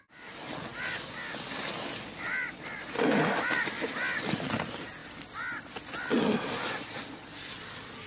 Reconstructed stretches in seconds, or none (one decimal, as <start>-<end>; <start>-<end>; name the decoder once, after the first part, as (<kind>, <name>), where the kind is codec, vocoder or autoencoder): none